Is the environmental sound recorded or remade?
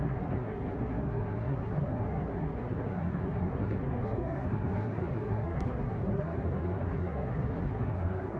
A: remade